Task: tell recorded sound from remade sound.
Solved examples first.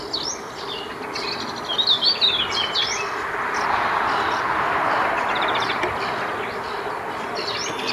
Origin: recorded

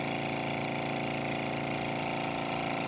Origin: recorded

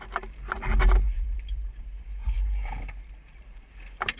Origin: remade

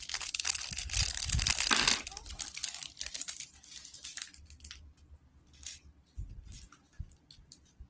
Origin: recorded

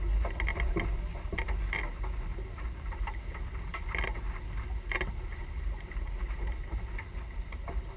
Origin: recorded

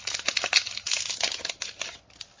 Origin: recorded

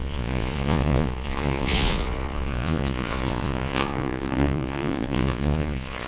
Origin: remade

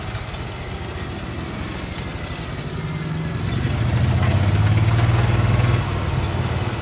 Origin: recorded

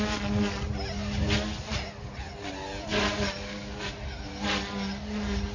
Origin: recorded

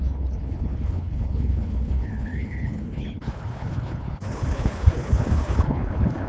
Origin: remade